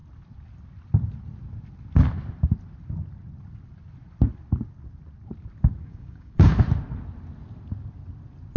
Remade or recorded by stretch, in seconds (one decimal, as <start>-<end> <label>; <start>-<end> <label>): 0.0-5.8 recorded; 5.8-6.5 remade; 6.5-8.6 recorded